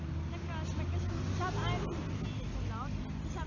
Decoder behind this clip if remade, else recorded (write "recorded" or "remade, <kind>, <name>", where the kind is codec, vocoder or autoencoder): recorded